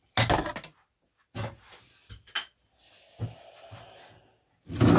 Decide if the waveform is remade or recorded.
recorded